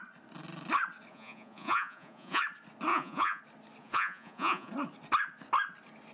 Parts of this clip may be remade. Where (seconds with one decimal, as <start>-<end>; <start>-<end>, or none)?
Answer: 1.1-2.4; 2.9-3.4; 3.8-4.7